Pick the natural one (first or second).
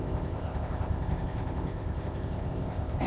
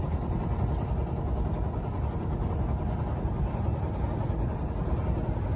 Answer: second